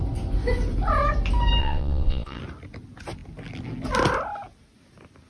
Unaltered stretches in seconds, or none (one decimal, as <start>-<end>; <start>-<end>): 0.0-1.6; 2.4-5.3